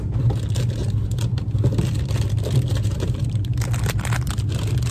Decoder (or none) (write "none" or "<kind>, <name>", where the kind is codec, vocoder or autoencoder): none